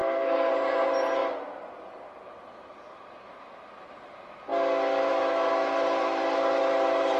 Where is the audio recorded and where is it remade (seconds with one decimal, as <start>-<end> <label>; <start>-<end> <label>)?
0.0-0.5 remade; 0.5-7.2 recorded